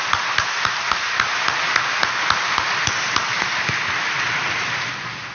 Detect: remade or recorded recorded